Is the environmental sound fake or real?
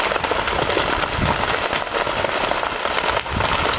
real